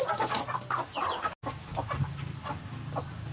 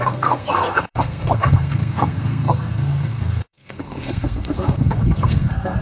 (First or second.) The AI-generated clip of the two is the second